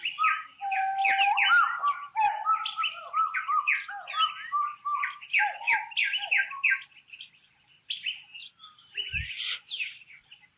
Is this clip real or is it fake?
real